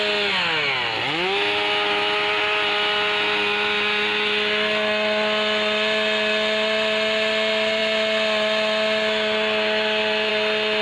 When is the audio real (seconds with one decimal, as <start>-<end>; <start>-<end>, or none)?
0.0-10.8